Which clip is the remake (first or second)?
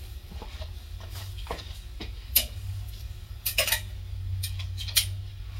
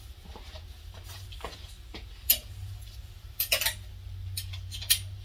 first